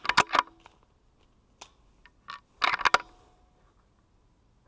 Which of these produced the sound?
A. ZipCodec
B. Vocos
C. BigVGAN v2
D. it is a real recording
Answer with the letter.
D